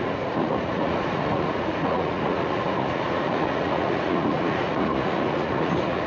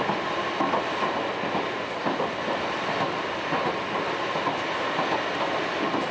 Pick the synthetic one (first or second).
first